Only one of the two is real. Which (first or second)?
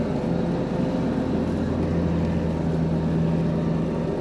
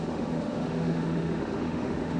first